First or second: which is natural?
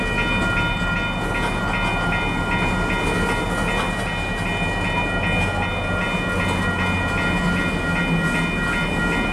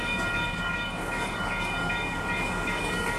first